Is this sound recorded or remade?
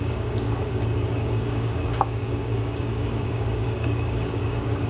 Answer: remade